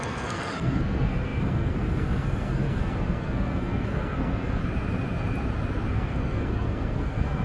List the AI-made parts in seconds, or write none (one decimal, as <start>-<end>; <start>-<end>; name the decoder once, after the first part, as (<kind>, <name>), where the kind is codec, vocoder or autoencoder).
0.0-4.6 (codec, SNAC); 5.9-7.4